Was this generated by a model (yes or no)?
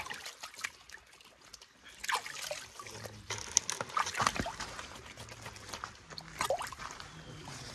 no